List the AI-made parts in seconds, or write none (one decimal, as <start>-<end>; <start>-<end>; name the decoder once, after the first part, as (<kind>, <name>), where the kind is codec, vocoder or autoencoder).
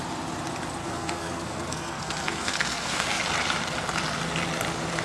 0.8-3.2 (codec, SNAC)